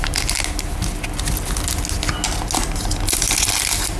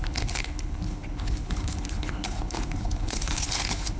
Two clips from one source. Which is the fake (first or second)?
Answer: second